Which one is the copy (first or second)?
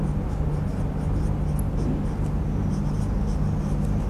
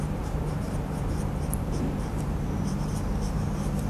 second